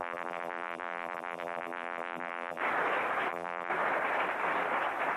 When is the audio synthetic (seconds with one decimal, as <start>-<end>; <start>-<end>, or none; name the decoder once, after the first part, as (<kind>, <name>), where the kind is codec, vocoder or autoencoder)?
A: 0.0-2.6 (vocoder, BigVGAN v2); 3.3-3.7